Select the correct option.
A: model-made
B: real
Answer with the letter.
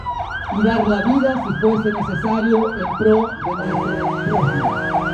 B